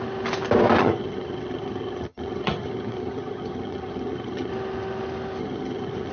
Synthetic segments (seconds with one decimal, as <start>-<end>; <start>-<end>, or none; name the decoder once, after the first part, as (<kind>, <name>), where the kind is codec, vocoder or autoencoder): 0.8-4.5 (vocoder, HiFi-GAN); 5.4-6.1